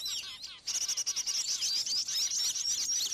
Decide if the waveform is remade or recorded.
recorded